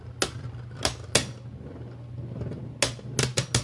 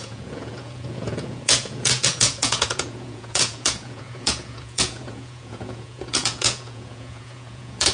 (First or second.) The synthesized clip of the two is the second